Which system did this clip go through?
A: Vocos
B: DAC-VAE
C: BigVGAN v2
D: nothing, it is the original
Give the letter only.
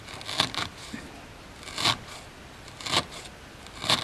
D